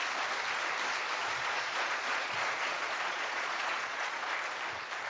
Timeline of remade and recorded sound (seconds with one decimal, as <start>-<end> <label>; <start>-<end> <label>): 0.0-1.2 recorded; 1.2-4.3 remade; 4.3-5.1 recorded

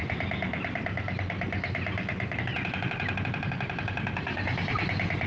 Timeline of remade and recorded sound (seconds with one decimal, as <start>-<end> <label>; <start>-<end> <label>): 0.0-5.3 recorded

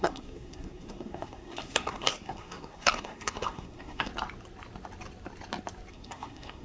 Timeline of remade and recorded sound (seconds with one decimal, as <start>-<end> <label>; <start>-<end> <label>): 0.0-4.1 remade; 4.1-5.9 recorded; 5.9-6.6 remade

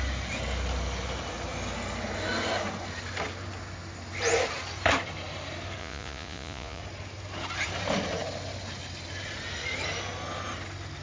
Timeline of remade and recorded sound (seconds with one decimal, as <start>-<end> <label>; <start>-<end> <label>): 0.0-5.8 recorded; 5.8-6.8 remade; 6.8-11.0 recorded

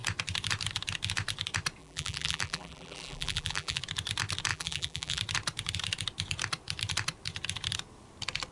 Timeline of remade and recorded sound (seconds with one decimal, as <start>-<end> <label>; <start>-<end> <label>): 0.0-1.8 recorded; 1.8-3.8 remade; 3.8-4.5 recorded; 4.5-5.2 remade; 5.2-8.5 recorded

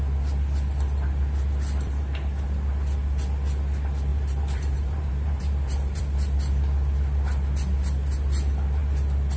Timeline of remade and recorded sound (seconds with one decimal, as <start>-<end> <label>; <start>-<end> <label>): 0.0-4.1 recorded; 4.1-6.0 remade; 6.0-9.4 recorded

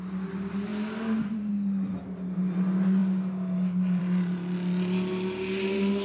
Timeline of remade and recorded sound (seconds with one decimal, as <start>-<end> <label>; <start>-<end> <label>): 0.0-6.0 recorded

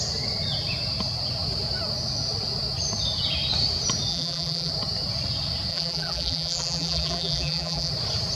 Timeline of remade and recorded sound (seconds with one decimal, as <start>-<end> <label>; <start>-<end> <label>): 0.0-4.1 recorded; 4.1-4.7 remade; 4.7-5.7 recorded; 5.7-7.9 remade; 7.9-8.4 recorded